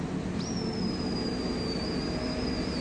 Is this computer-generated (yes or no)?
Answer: no